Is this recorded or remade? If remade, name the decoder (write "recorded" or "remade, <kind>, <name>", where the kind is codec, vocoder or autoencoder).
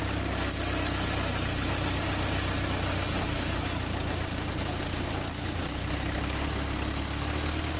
recorded